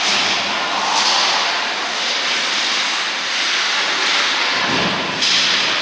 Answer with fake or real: real